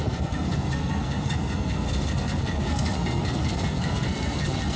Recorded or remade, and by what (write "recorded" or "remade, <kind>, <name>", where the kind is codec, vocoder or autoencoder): remade, codec, SNAC